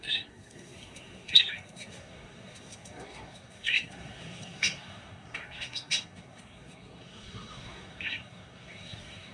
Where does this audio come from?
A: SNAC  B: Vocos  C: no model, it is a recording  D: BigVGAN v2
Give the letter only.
A